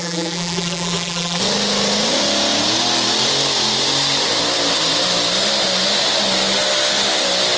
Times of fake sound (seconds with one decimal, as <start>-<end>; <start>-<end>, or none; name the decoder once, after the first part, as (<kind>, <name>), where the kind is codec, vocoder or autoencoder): 0.0-1.4 (vocoder, BigVGAN v2)